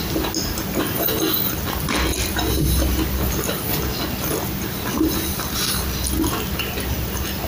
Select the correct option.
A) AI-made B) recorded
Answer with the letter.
B